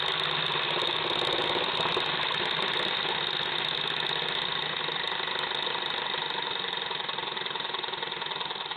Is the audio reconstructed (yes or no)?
no